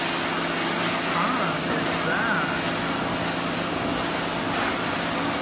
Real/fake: real